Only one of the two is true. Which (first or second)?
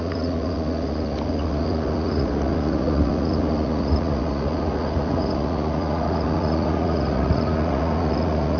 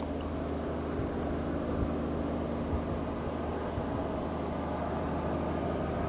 second